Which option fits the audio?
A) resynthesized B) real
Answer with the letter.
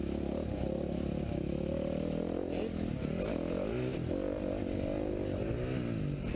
B